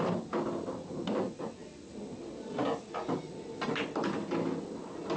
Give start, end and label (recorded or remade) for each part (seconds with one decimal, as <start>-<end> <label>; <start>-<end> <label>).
0.0-5.2 recorded